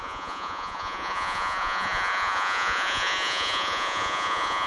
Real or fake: fake